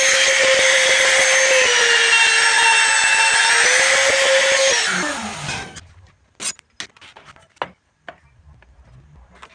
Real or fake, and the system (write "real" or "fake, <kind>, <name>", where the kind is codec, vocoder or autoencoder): real